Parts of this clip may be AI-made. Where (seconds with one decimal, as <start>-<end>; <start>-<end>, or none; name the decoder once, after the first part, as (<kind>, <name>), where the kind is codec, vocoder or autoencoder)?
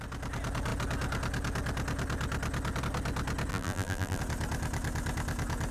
3.5-4.2 (vocoder, BigVGAN v2)